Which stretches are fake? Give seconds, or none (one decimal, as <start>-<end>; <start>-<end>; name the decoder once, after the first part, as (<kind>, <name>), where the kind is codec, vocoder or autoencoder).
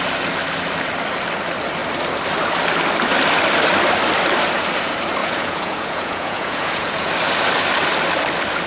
5.2-7.1 (vocoder, Vocos)